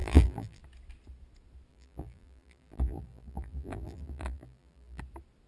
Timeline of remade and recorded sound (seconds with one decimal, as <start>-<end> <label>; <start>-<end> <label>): 0.0-0.6 remade; 0.6-1.7 recorded; 1.7-5.0 remade; 5.0-5.5 recorded